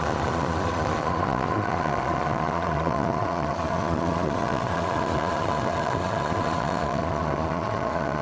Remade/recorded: remade